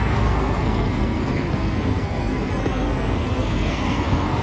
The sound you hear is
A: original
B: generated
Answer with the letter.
B